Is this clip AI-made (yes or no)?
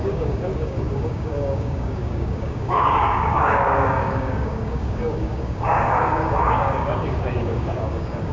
yes